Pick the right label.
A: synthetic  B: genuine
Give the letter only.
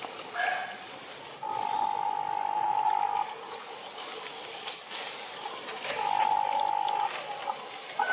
B